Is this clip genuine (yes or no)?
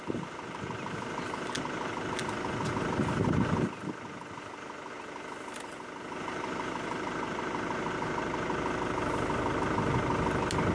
yes